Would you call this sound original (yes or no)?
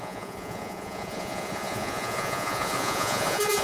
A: no